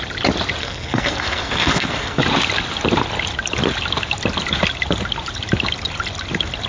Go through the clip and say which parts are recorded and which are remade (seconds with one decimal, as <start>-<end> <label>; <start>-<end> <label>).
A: 0.0-0.6 recorded; 0.6-2.2 remade; 2.2-6.7 recorded